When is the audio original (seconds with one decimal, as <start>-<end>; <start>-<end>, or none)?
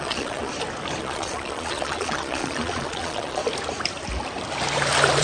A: 0.5-1.0; 3.4-5.2